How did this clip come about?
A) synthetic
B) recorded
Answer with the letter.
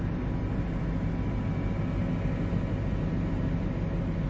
B